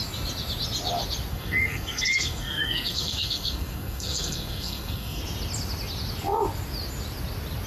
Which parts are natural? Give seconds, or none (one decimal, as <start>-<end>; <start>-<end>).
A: 0.0-1.3; 5.2-7.7